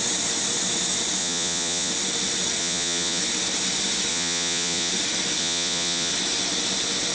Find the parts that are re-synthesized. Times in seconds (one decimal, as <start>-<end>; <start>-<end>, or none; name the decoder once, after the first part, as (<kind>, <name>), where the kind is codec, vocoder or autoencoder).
1.2-1.9 (vocoder, Vocos); 2.6-3.2; 4.1-4.9; 5.4-6.1